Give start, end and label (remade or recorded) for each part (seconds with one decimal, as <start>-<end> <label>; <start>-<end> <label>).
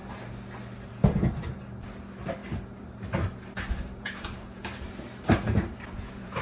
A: 0.0-2.4 recorded; 2.4-6.4 remade